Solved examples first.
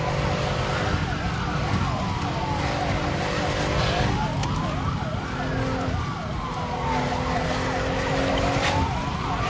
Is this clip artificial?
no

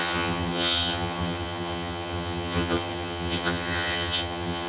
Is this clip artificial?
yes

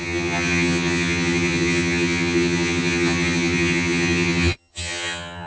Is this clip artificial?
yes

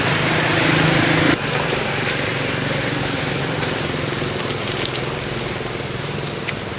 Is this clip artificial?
no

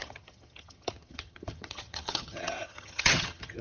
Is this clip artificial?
yes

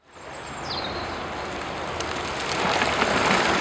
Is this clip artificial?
no